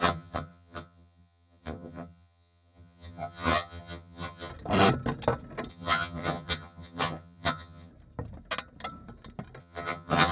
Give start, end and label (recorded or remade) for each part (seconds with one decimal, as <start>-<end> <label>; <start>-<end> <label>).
0.0-4.5 remade; 4.5-5.7 recorded; 5.7-7.9 remade; 7.9-9.6 recorded; 9.6-10.3 remade